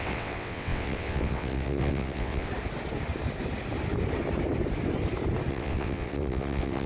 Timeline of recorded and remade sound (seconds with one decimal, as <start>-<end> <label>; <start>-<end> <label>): 0.0-2.5 remade; 2.5-5.5 recorded; 5.5-6.9 remade